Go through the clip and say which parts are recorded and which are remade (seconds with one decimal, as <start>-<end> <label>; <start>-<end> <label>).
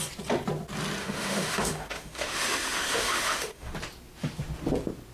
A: 0.0-1.0 recorded; 1.0-3.7 remade; 3.7-5.1 recorded